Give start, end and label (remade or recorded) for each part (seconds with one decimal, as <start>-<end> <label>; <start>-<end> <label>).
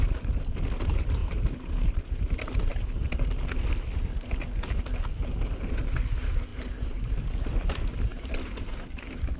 0.0-1.2 recorded; 1.2-2.2 remade; 2.2-6.5 recorded; 6.5-7.3 remade; 7.3-8.1 recorded; 8.1-9.0 remade; 9.0-9.4 recorded